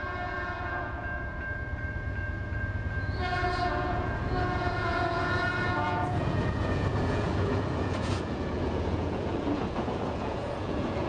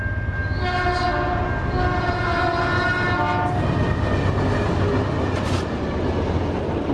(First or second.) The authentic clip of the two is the second